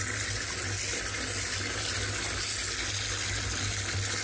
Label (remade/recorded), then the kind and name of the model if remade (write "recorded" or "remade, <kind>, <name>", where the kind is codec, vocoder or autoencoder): recorded